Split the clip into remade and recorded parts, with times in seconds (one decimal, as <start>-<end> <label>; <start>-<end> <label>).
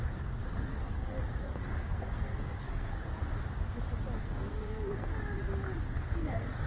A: 0.0-3.1 remade; 3.1-4.2 recorded; 4.2-5.1 remade; 5.1-5.9 recorded; 5.9-6.7 remade